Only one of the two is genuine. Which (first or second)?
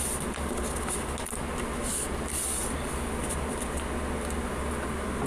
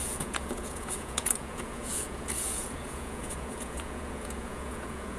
first